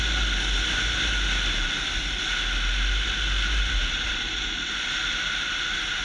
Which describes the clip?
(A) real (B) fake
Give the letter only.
A